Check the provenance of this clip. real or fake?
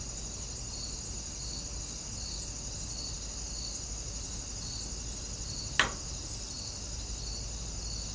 real